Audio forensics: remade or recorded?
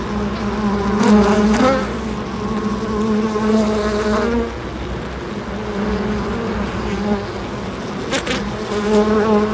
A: recorded